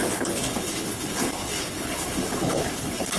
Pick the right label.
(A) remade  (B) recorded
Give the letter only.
A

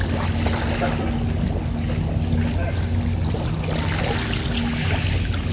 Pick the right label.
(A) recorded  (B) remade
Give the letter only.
A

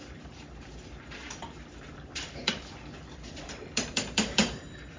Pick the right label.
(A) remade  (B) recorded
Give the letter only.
A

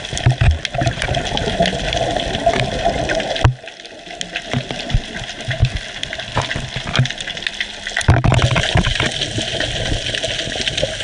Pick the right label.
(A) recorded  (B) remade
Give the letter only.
A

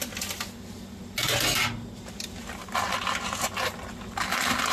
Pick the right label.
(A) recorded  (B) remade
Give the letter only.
A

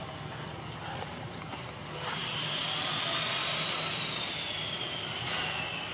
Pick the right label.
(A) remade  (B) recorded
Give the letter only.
B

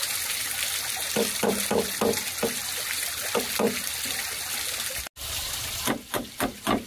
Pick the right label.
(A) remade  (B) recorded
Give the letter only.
B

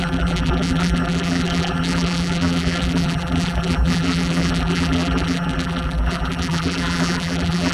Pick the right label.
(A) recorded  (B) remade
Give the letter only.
B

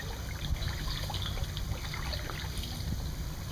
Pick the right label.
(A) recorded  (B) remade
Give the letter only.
A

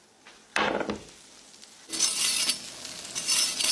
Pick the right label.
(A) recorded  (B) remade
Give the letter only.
A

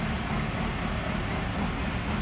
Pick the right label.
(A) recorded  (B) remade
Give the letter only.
A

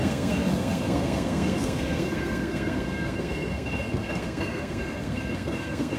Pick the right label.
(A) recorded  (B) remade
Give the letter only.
B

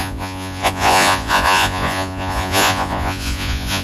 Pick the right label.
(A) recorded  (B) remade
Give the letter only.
B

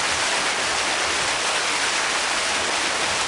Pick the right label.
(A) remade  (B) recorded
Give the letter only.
B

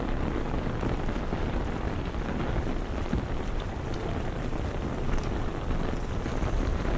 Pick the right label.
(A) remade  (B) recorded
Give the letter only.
A